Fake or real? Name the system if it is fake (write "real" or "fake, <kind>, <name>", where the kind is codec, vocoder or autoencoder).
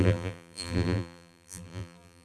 fake, vocoder, BigVGAN v2